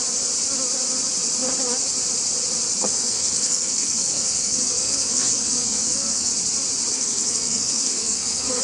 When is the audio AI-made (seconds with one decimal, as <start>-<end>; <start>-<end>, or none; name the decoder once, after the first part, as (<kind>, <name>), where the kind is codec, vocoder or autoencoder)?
2.8-6.3 (codec, SNAC); 6.9-8.6